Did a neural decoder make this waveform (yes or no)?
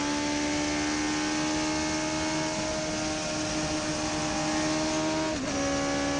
no